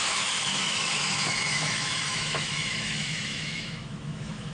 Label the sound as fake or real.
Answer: fake